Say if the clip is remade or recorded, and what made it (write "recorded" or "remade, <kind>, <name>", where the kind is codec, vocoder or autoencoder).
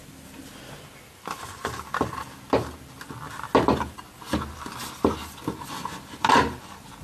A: recorded